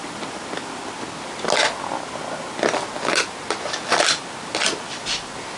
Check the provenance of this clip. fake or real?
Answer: real